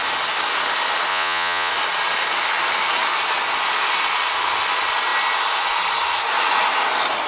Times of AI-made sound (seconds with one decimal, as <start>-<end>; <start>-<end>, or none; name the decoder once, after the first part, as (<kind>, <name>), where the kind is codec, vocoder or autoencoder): 1.1-1.7 (vocoder, Vocos)